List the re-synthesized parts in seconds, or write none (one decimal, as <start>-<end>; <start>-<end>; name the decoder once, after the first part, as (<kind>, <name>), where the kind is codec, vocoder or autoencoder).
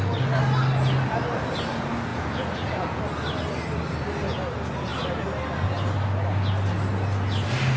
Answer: 2.1-3.0 (vocoder, Vocos)